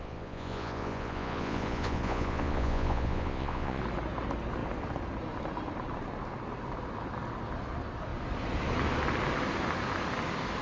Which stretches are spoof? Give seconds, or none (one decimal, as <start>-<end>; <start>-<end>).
0.0-3.8